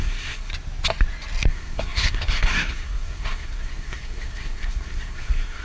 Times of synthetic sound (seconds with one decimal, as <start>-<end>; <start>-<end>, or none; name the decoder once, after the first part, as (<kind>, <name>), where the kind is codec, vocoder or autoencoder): 0.0-0.5 (codec, SNAC); 1.5-5.6